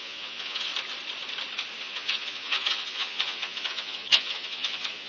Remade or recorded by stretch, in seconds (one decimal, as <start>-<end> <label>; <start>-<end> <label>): 0.0-0.7 remade; 0.7-1.8 recorded; 1.8-5.1 remade